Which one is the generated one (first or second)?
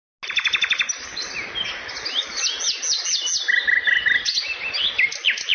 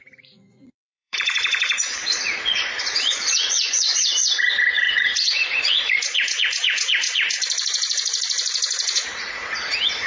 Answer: second